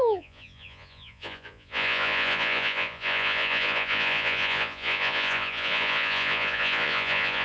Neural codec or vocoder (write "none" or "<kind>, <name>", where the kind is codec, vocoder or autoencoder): vocoder, Vocos